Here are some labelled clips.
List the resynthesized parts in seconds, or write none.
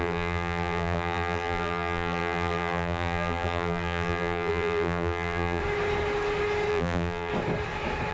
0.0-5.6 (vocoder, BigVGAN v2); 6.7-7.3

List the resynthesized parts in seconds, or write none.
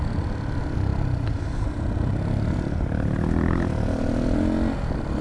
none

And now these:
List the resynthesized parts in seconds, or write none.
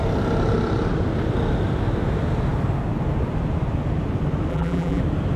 4.5-5.0 (vocoder, BigVGAN v2)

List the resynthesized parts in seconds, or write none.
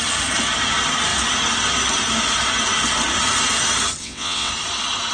4.0-4.5 (vocoder, WaveNeXt)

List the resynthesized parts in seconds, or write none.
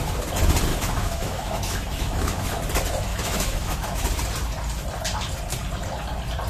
0.7-2.6 (autoencoder, DAC-VAE); 3.1-4.2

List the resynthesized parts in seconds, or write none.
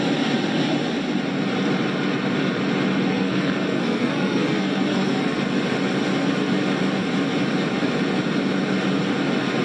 3.1-5.4 (codec, SNAC)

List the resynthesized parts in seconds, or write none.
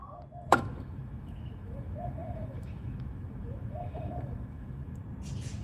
0.5-5.0 (autoencoder, DAC-VAE)